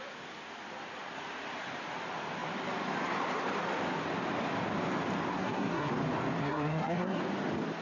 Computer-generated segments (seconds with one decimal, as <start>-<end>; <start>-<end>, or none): 5.3-5.9; 6.4-7.2